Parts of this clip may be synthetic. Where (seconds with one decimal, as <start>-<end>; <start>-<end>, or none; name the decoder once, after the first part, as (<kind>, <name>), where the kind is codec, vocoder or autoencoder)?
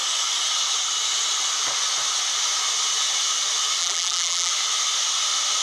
3.8-4.5 (vocoder, BigVGAN v2)